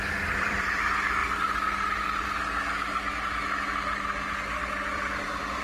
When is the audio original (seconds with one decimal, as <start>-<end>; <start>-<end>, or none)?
1.2-4.6